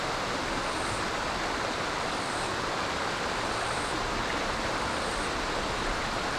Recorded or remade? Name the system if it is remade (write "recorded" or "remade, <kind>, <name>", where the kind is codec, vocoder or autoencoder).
recorded